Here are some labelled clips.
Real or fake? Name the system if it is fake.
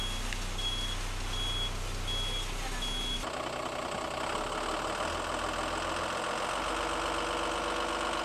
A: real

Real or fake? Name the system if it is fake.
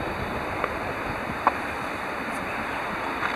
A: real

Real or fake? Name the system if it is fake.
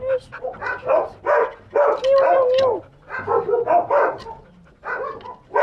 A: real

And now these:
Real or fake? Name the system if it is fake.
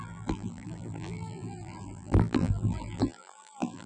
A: fake, vocoder, BigVGAN v2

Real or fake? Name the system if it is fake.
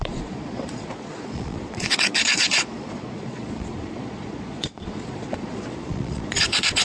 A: fake, vocoder, Vocos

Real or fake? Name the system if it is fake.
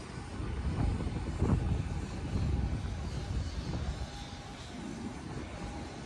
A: real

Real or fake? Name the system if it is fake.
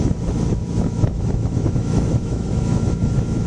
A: fake, autoencoder, DAC-VAE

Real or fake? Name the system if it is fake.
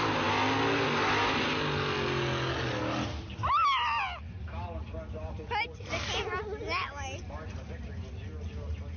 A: real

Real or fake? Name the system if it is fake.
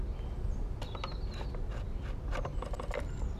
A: real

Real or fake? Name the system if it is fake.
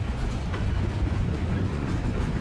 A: fake, vocoder, Vocos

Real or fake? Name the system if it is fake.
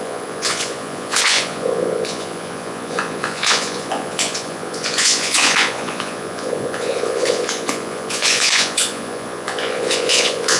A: fake, vocoder, Vocos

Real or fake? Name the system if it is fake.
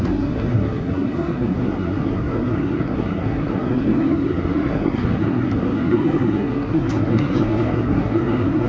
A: fake, codec, SNAC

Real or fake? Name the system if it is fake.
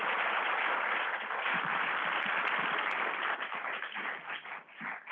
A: real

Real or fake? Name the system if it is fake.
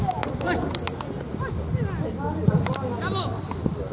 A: real